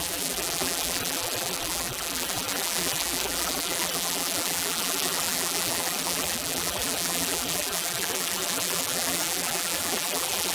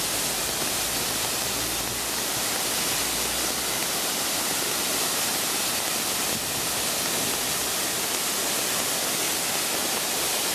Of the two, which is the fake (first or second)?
first